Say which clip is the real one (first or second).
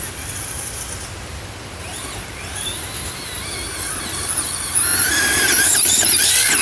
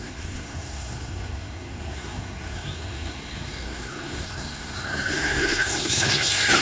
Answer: first